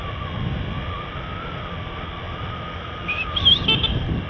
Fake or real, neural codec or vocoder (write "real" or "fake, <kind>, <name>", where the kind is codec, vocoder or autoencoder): real